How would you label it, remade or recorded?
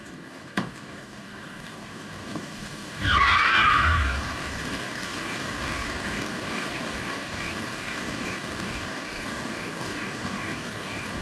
remade